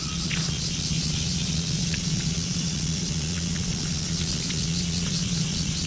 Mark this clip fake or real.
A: fake